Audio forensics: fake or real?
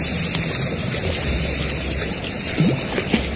real